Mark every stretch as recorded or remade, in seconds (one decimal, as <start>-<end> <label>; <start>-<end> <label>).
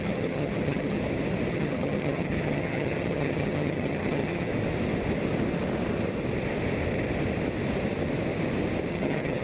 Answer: 0.0-1.0 remade; 1.0-1.5 recorded; 1.5-4.5 remade; 4.5-8.9 recorded; 8.9-9.4 remade